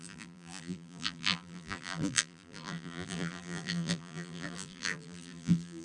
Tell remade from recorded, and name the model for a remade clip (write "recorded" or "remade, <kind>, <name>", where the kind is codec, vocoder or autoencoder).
remade, vocoder, BigVGAN v2